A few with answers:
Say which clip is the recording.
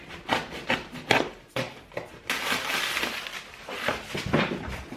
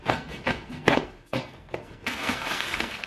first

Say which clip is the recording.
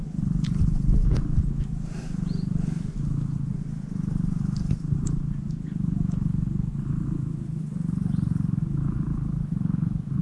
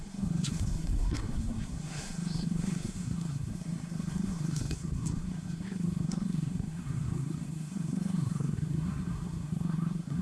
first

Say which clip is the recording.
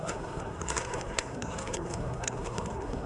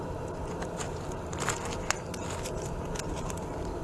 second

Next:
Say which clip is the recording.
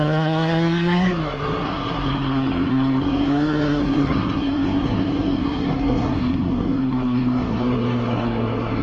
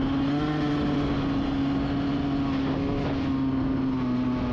second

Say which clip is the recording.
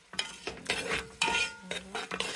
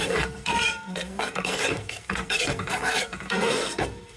first